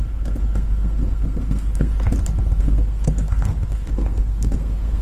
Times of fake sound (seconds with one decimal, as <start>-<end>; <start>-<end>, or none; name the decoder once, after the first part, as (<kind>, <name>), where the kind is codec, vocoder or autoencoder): 0.0-1.9 (codec, SNAC); 2.6-5.0